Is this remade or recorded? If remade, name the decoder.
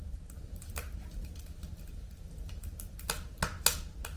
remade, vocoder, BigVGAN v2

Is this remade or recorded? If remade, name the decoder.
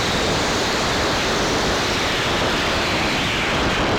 remade, vocoder, BigVGAN v2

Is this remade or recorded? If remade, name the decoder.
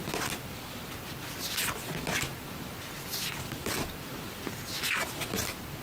recorded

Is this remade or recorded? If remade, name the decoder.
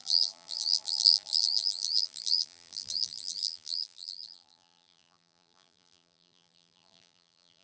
remade, vocoder, BigVGAN v2